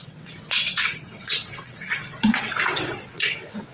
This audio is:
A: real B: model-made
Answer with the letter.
B